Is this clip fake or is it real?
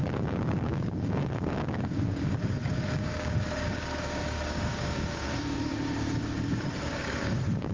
fake